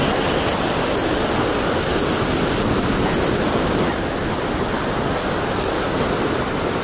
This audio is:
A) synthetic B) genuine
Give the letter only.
B